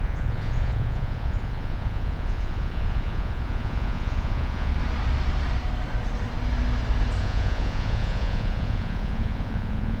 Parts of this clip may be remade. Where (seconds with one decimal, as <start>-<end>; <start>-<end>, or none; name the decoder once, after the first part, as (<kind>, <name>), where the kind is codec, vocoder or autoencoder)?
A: 0.0-4.7 (vocoder, Vocos); 7.2-10.0